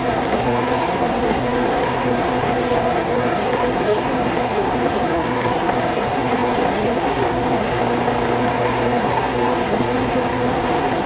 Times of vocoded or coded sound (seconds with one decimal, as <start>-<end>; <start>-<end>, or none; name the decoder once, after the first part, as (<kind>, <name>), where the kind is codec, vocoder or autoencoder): 0.0-7.8 (codec, SNAC); 8.4-11.1